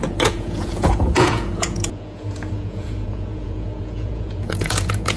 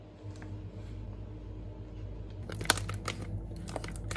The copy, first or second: first